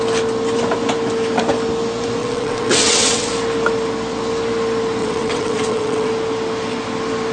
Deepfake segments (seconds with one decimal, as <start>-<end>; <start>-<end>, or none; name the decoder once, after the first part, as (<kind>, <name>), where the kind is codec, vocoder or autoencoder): 2.2-3.3 (vocoder, WaveNeXt); 5.0-6.1